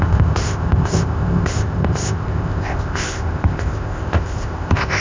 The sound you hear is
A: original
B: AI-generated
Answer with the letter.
B